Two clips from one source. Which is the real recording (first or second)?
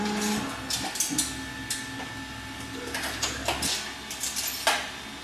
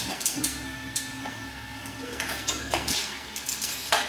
first